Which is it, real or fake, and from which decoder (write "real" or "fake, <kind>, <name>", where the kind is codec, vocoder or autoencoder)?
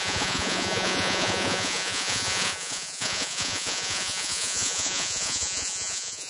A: fake, vocoder, Vocos